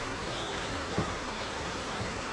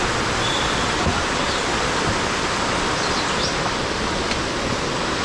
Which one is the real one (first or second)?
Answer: second